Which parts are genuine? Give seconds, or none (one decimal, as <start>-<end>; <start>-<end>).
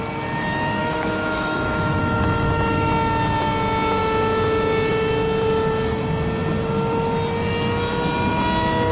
0.0-0.8; 2.9-8.9